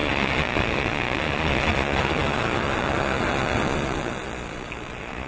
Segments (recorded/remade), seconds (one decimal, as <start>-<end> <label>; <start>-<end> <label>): 0.0-5.3 remade